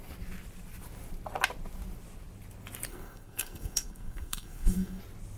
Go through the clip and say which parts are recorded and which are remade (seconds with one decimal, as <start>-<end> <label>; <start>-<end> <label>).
0.0-2.9 recorded; 2.9-5.0 remade; 5.0-5.4 recorded